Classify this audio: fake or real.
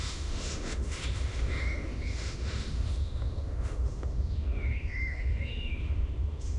fake